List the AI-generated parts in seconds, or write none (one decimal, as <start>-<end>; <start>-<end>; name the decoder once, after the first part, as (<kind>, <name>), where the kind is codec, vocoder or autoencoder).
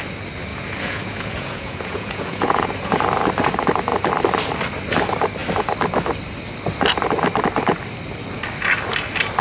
0.5-2.7 (vocoder, Vocos)